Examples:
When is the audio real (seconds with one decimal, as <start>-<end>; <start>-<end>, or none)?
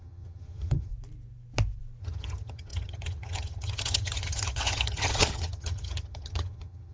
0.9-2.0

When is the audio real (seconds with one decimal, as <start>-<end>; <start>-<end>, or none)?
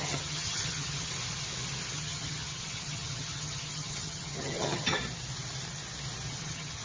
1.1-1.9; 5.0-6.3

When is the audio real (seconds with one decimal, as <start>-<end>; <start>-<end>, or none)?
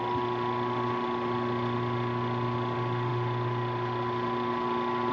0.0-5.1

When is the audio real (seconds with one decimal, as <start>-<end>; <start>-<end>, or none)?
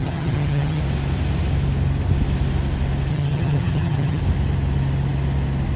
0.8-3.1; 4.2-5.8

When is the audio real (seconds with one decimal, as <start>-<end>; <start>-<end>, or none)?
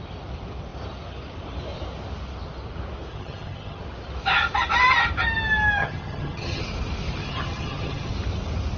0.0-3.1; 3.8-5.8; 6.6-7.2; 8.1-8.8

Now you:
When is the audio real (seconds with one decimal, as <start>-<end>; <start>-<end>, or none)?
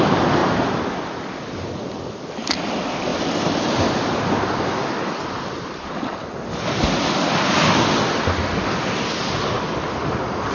0.0-10.5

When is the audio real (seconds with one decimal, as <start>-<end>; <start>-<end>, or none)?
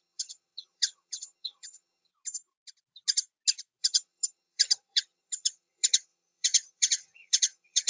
2.1-3.8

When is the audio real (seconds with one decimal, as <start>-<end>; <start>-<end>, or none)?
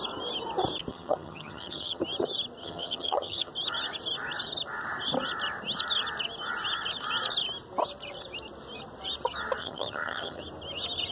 0.0-0.9; 2.0-2.6; 3.5-9.6; 10.4-11.1